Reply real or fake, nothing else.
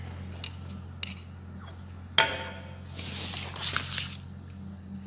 real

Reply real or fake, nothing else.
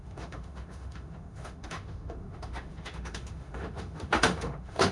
fake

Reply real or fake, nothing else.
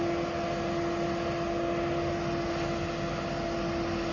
real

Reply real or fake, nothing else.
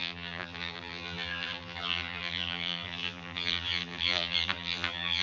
fake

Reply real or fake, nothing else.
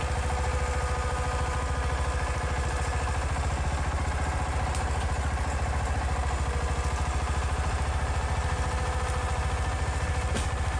real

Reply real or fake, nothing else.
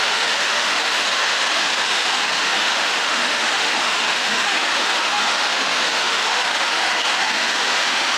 fake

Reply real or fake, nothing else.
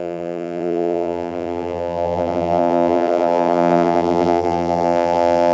fake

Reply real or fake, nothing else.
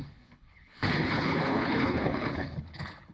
fake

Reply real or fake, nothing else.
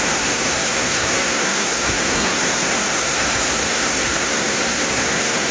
fake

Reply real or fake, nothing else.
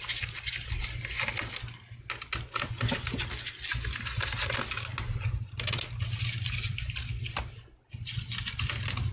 real